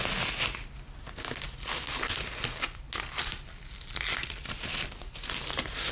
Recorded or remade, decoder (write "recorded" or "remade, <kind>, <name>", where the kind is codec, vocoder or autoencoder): recorded